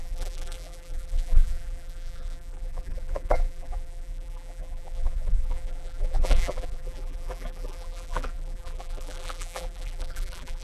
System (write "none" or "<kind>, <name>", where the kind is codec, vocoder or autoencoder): vocoder, BigVGAN v2